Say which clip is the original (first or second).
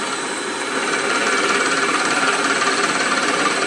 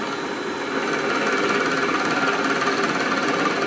second